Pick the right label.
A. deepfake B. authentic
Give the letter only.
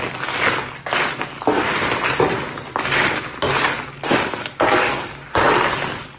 B